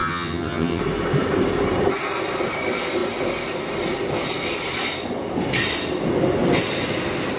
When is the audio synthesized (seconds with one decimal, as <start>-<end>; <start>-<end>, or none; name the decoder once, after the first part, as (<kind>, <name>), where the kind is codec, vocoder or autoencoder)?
0.0-0.8 (vocoder, HiFi-GAN)